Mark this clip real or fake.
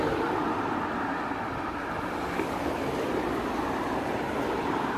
real